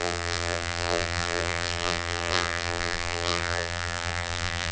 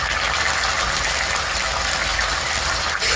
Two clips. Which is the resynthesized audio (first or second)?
first